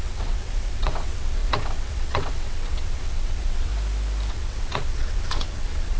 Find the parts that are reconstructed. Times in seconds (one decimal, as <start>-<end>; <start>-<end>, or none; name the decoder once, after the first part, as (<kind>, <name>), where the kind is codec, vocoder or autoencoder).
0.0-3.7 (vocoder, WaveNeXt); 4.3-6.0